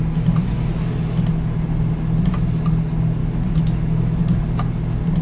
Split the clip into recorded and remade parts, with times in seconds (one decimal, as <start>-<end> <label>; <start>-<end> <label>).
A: 0.0-3.2 recorded; 3.2-4.2 remade; 4.2-5.2 recorded